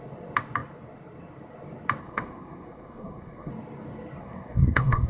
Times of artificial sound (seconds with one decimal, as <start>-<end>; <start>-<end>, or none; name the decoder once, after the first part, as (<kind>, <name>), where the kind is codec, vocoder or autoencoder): 2.0-3.5 (codec, SNAC); 4.2-5.1